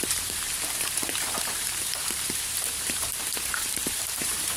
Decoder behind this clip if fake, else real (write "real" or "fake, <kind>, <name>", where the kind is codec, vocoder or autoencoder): fake, vocoder, BigVGAN v2